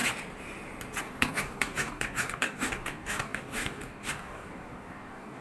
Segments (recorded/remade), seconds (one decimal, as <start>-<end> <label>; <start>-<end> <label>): 0.0-1.0 recorded; 1.0-5.4 remade